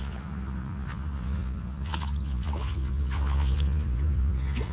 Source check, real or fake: fake